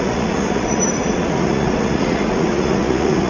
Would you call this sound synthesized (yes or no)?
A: yes